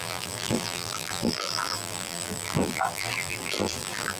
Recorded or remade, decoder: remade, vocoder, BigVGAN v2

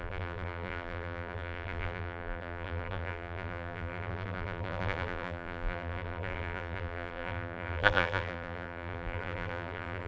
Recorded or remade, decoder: remade, vocoder, BigVGAN v2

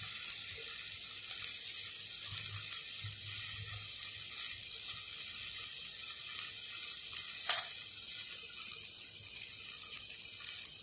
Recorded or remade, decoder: recorded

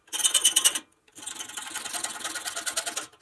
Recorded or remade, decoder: remade, vocoder, BigVGAN v2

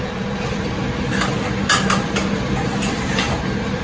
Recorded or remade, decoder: recorded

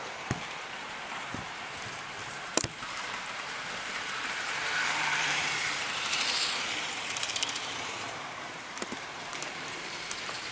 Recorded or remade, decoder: remade, vocoder, BigVGAN v2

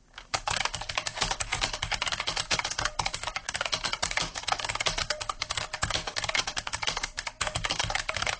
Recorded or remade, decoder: remade, codec, DAC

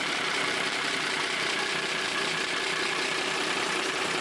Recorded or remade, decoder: remade, vocoder, BigVGAN v2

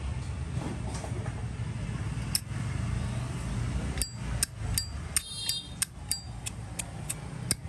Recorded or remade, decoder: recorded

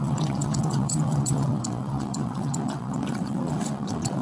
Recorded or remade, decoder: remade, vocoder, WaveNeXt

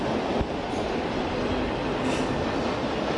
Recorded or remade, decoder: recorded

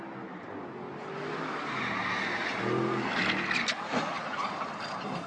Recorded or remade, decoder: recorded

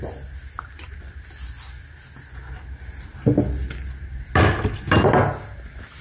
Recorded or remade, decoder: recorded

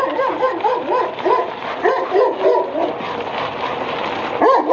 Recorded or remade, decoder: recorded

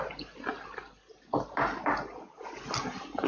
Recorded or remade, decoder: recorded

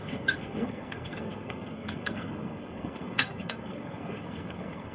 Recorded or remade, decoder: remade, codec, SNAC